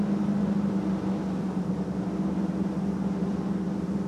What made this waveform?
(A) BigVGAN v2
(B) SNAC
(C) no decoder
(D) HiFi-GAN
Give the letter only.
C